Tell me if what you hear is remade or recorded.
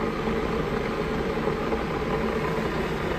recorded